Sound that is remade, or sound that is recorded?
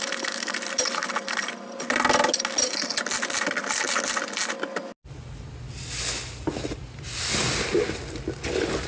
recorded